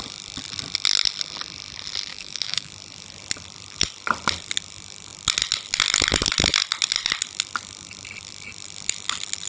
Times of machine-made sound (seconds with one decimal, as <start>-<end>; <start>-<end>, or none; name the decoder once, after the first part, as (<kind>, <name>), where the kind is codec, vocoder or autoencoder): 2.1-2.7 (autoencoder, DAC-VAE)

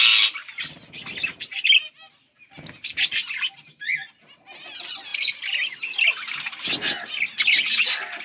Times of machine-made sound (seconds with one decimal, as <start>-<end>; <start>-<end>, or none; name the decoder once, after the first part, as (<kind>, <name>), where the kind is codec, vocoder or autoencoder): none

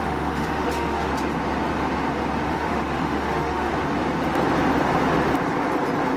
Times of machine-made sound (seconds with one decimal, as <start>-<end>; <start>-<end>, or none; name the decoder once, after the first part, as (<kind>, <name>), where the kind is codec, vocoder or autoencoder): 0.0-1.1 (autoencoder, DAC-VAE); 2.5-3.7

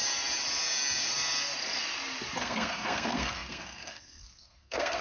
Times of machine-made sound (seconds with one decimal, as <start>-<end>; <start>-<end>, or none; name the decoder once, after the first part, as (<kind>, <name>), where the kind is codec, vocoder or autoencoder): 2.4-5.0 (codec, SNAC)

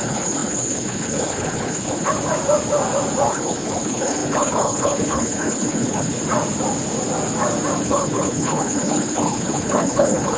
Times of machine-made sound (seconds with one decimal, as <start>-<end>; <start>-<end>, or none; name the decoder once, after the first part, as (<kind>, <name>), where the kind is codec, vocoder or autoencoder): 0.0-2.1 (codec, HILCodec); 3.3-6.2; 7.8-10.4